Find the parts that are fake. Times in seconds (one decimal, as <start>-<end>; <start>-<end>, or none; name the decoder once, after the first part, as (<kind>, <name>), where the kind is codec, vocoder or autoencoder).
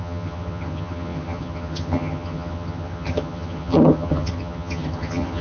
0.0-5.4 (vocoder, HiFi-GAN)